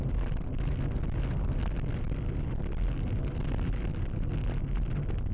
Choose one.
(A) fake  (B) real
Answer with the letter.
B